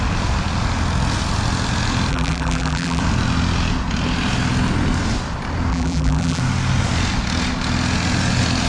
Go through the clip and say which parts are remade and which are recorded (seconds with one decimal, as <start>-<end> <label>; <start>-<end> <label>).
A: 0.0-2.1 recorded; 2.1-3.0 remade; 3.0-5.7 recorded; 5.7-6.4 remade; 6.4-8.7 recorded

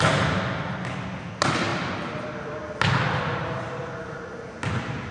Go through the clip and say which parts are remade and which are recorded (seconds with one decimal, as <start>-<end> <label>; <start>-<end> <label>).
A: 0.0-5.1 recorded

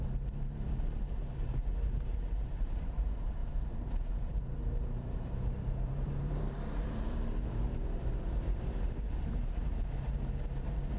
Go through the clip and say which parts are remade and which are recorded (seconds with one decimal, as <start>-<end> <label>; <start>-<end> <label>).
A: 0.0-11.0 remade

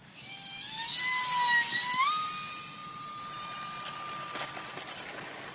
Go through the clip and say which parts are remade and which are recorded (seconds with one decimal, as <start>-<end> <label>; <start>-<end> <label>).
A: 0.0-2.0 remade; 2.0-5.5 recorded

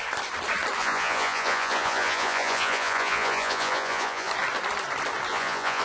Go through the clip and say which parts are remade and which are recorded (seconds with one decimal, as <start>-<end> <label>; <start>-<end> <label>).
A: 0.0-0.8 recorded; 0.8-4.3 remade; 4.3-5.3 recorded; 5.3-5.8 remade

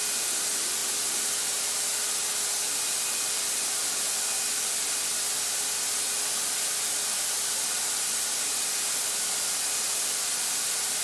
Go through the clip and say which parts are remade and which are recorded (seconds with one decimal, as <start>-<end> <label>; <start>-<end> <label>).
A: 0.0-11.0 recorded